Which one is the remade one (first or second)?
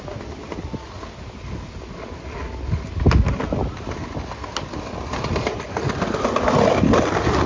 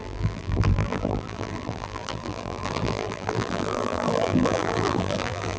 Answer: second